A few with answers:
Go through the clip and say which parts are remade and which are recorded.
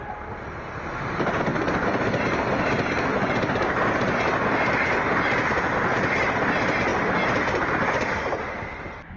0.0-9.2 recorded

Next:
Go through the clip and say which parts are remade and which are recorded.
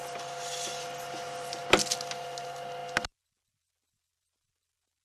0.0-5.0 recorded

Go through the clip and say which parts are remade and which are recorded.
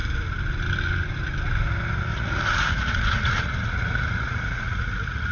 0.0-2.1 recorded; 2.1-5.3 remade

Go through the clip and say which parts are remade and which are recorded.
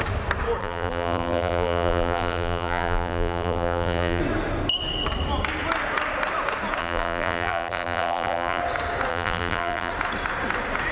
0.0-0.6 recorded; 0.6-4.2 remade; 4.2-6.8 recorded; 6.8-8.6 remade; 8.6-9.1 recorded; 9.1-9.9 remade; 9.9-10.9 recorded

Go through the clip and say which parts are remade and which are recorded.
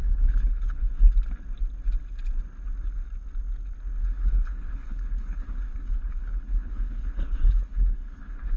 0.0-0.9 remade; 0.9-4.0 recorded; 4.0-8.6 remade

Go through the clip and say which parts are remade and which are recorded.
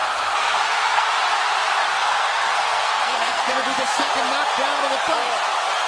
0.0-1.1 remade; 1.1-1.9 recorded; 1.9-4.1 remade; 4.1-5.9 recorded